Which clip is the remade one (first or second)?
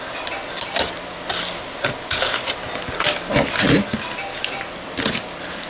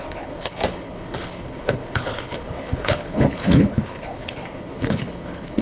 second